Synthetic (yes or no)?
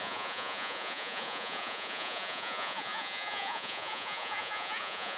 yes